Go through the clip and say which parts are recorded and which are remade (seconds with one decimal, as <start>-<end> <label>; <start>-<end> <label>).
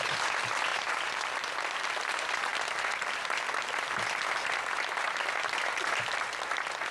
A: 0.0-0.7 recorded; 0.7-1.5 remade; 1.5-6.9 recorded